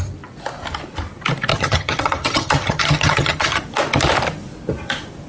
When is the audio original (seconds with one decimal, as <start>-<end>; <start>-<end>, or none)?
0.0-1.5; 3.6-5.3